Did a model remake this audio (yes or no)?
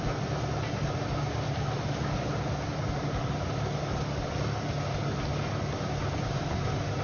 no